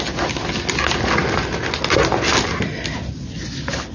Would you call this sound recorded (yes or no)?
yes